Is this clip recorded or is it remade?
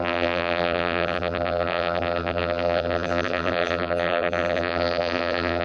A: remade